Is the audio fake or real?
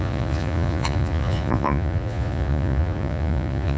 fake